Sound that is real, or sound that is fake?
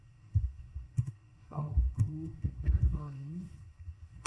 fake